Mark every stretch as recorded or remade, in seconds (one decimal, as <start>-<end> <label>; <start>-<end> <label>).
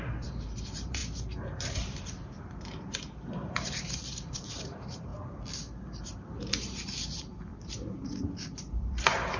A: 0.0-1.0 remade; 1.0-2.4 recorded; 2.4-5.1 remade; 5.1-6.0 recorded; 6.0-7.5 remade; 7.5-8.7 recorded; 8.7-9.4 remade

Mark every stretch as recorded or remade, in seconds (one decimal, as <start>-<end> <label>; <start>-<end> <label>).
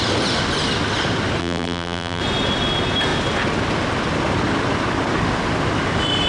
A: 0.0-1.4 recorded; 1.4-2.2 remade; 2.2-6.3 recorded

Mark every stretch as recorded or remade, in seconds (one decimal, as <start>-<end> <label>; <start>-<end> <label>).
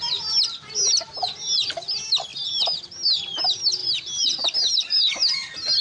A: 0.0-2.3 recorded; 2.3-2.8 remade; 2.8-3.8 recorded; 3.8-5.2 remade; 5.2-5.8 recorded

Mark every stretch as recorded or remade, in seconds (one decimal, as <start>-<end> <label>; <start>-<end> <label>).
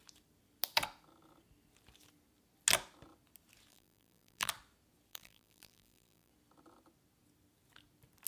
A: 0.0-3.7 recorded; 3.7-4.5 remade; 4.5-5.1 recorded; 5.1-6.3 remade; 6.3-8.3 recorded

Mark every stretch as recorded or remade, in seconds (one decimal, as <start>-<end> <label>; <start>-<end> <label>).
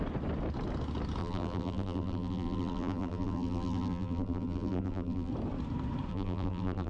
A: 0.0-1.2 recorded; 1.2-5.3 remade; 5.3-6.1 recorded; 6.1-6.9 remade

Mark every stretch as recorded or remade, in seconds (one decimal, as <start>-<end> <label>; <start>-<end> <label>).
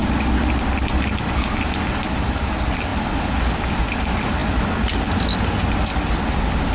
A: 0.0-1.2 remade; 1.2-6.7 recorded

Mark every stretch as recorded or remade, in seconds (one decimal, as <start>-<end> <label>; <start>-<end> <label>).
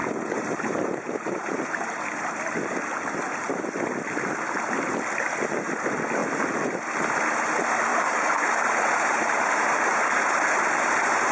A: 0.0-2.3 remade; 2.3-7.9 recorded; 7.9-9.5 remade; 9.5-11.3 recorded